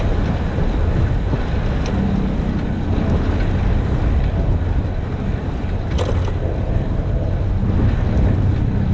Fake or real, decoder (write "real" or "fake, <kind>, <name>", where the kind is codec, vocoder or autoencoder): real